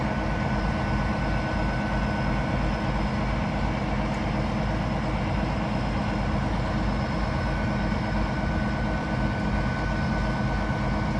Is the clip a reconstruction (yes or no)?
no